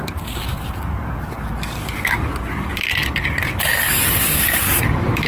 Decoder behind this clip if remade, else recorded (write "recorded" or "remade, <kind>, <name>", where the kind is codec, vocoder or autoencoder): remade, codec, DAC